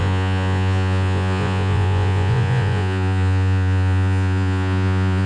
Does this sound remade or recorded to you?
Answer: remade